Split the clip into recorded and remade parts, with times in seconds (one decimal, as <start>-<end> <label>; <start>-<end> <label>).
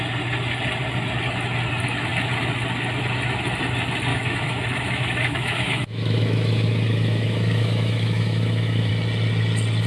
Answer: 0.0-4.1 recorded; 4.1-8.9 remade; 8.9-9.9 recorded